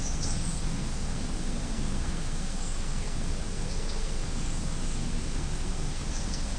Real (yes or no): no